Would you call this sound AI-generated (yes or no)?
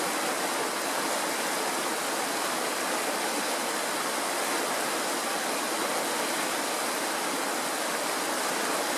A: no